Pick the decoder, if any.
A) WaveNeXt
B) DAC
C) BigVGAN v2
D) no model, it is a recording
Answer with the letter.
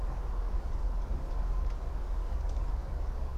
B